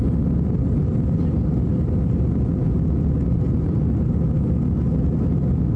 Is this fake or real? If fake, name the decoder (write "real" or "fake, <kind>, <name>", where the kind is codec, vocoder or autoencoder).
real